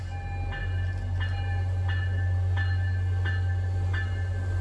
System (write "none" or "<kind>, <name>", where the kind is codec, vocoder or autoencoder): none